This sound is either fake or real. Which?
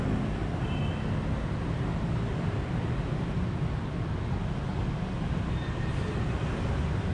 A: real